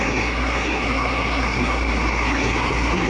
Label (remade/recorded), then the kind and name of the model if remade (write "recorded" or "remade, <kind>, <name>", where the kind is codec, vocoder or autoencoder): remade, codec, SNAC